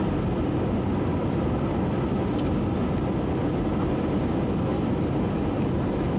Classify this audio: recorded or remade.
recorded